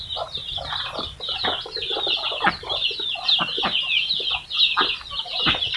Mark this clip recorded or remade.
recorded